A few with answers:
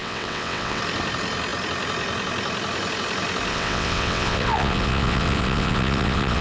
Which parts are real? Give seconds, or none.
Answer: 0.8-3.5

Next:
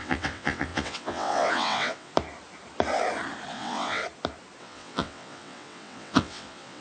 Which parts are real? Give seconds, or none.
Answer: 2.1-3.5; 4.0-4.6

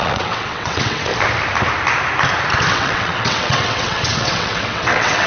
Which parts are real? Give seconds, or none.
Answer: 1.1-2.7